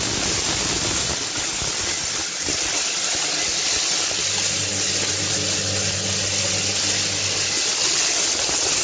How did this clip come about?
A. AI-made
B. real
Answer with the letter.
B